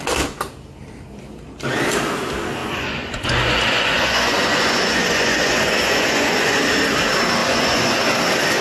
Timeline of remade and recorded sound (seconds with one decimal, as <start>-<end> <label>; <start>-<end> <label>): 0.0-2.6 recorded; 2.6-6.6 remade; 6.6-7.4 recorded; 7.4-8.0 remade; 8.0-8.6 recorded